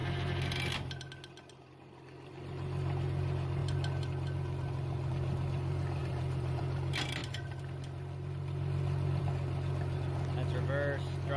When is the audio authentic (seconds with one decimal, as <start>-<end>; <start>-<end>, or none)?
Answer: 0.0-6.0; 6.6-11.4